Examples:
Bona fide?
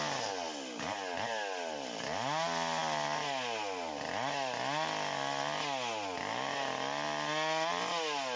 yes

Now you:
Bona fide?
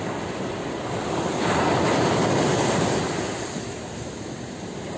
yes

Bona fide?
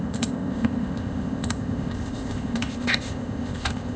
no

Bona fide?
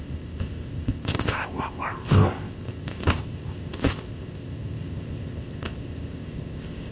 no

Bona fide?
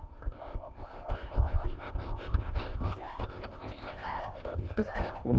no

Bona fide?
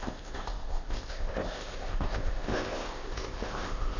no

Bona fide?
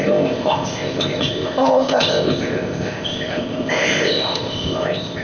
no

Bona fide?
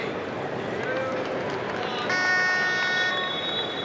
yes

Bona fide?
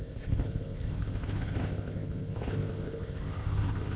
no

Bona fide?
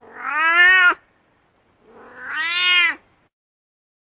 yes